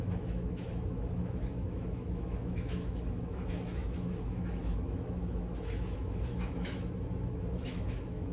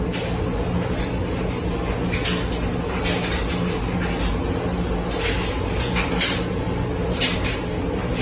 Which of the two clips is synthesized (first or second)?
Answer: first